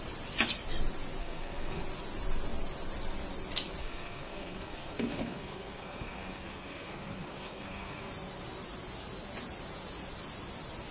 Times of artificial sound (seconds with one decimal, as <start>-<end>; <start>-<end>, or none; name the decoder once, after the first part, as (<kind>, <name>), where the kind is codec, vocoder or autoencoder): 1.2-1.8 (codec, SNAC); 3.8-8.1